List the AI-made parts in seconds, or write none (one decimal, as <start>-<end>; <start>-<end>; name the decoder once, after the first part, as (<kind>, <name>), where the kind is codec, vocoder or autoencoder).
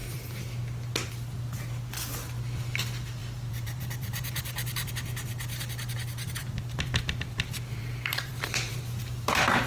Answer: 3.2-4.9 (vocoder, BigVGAN v2); 6.4-8.7